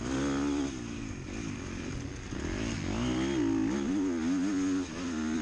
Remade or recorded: recorded